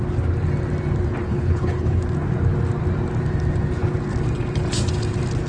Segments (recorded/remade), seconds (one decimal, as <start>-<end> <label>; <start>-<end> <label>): 0.0-1.3 recorded; 1.3-2.0 remade; 2.0-5.5 recorded